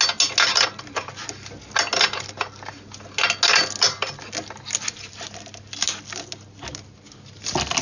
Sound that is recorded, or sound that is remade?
recorded